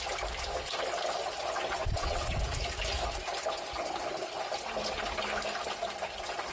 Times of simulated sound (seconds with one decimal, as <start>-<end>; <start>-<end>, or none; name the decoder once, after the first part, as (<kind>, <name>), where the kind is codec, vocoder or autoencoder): 1.8-2.4 (vocoder, WaveNeXt)